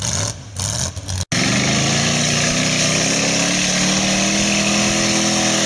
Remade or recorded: recorded